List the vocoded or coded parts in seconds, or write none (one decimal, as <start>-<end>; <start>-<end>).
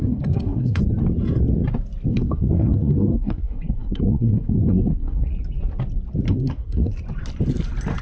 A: 0.0-0.8; 2.1-5.3; 6.3-6.9